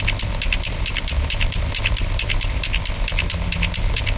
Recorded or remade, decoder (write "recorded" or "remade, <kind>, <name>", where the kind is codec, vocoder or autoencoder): recorded